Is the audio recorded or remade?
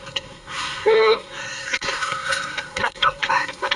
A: remade